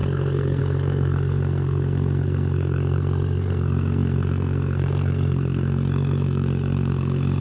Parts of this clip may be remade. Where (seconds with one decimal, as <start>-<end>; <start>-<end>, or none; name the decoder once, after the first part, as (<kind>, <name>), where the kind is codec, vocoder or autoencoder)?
0.0-7.4 (codec, SNAC)